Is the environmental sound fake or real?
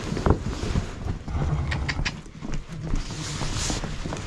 real